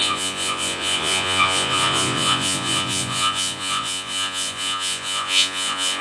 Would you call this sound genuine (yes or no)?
no